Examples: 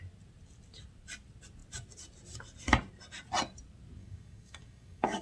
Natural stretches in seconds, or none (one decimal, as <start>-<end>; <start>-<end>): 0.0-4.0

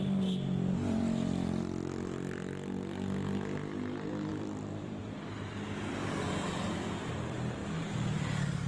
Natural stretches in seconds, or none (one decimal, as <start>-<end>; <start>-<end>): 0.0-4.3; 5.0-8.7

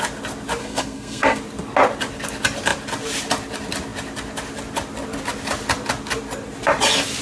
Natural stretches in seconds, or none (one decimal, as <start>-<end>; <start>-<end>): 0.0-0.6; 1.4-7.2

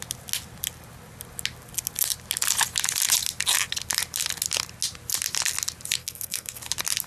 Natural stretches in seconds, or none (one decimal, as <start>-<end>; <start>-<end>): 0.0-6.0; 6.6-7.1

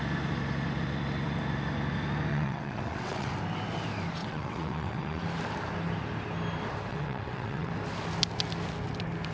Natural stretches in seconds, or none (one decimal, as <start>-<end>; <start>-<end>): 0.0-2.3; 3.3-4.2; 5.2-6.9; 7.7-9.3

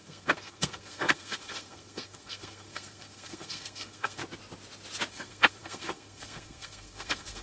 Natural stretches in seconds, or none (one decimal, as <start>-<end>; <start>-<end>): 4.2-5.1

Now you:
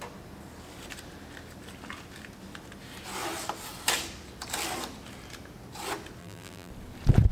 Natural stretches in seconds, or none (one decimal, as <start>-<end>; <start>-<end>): 0.0-6.2; 6.7-7.3

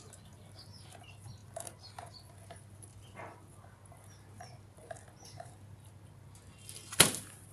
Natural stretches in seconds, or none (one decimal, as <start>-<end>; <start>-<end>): 0.0-7.5